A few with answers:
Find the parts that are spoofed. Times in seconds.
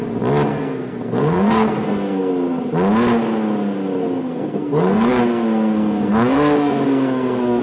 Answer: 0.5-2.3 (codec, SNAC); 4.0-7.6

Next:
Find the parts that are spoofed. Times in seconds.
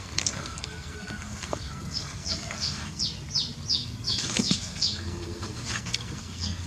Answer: 0.0-3.0 (codec, SNAC); 3.7-6.7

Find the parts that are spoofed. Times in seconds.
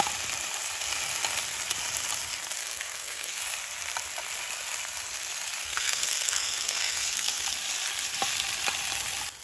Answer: 2.6-3.4 (codec, SNAC); 5.6-7.5